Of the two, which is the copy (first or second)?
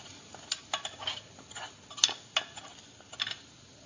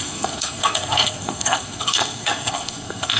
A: second